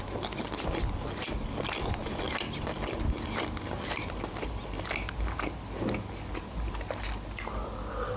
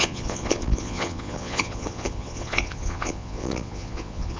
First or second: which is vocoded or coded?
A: second